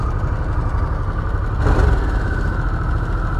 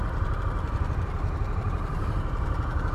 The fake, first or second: second